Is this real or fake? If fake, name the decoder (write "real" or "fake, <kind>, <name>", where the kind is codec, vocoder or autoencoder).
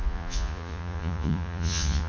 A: fake, vocoder, Vocos